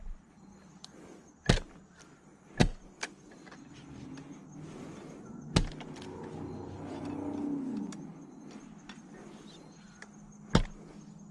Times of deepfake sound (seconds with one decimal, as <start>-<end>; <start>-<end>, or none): none